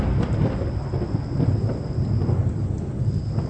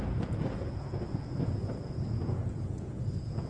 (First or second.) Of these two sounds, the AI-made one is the second